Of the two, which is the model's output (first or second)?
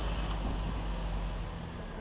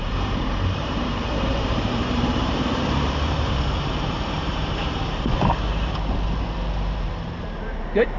second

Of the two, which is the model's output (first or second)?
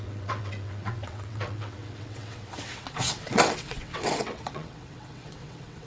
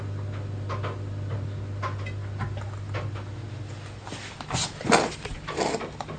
first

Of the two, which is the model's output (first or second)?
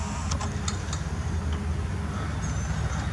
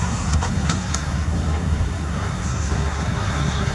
second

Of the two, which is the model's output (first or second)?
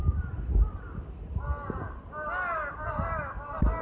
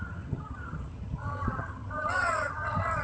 second